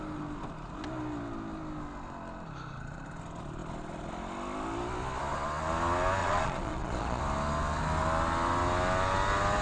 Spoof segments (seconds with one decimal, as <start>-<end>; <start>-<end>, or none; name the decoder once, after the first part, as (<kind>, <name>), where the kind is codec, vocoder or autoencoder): 6.2-7.2 (vocoder, Vocos)

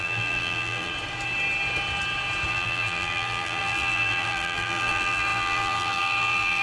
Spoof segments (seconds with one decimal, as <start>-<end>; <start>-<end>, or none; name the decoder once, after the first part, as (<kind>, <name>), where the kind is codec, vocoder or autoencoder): 0.0-0.9 (vocoder, BigVGAN v2); 2.5-6.6

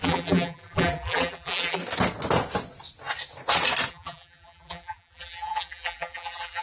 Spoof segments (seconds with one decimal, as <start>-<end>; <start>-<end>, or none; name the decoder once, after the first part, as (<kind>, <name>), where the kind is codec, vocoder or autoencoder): 0.0-1.8 (vocoder, BigVGAN v2); 3.9-6.6

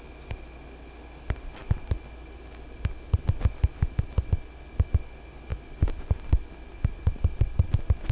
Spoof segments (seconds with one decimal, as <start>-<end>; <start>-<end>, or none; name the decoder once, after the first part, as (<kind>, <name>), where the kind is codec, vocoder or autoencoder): none